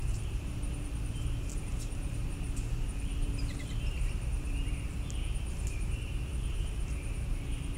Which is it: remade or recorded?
remade